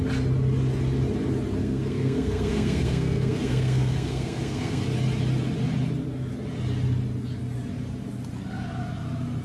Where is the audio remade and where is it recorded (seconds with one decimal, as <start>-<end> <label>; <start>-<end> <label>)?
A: 0.0-1.6 recorded; 1.6-4.8 remade; 4.8-9.4 recorded